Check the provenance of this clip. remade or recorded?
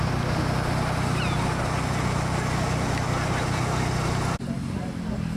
recorded